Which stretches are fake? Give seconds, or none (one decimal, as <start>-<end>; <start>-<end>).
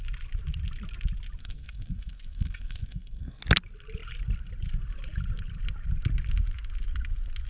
1.4-3.4